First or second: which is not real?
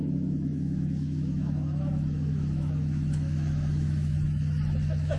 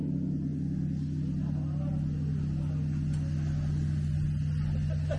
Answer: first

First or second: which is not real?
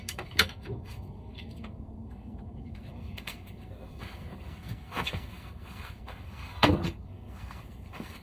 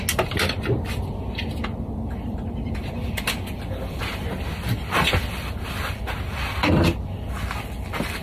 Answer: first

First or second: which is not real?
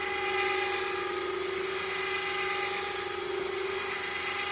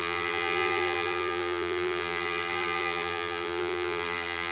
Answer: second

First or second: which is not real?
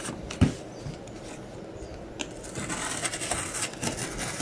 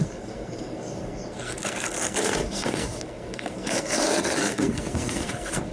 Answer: second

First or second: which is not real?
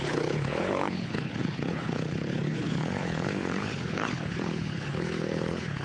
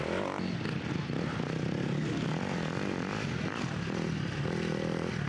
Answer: first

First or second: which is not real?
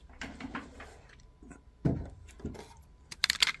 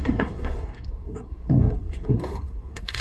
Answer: second